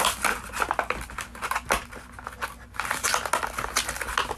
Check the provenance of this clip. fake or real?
real